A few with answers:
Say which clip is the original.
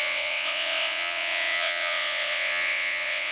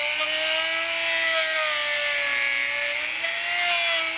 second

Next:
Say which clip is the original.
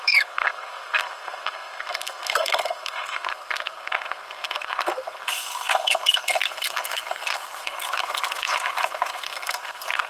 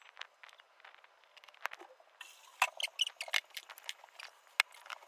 second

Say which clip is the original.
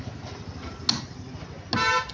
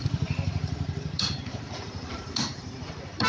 first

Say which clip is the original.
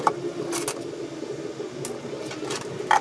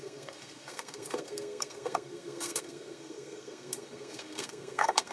first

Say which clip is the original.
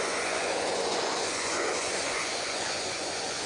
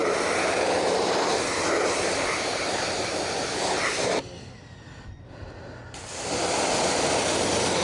second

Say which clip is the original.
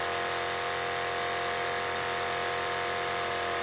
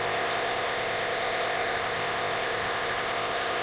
first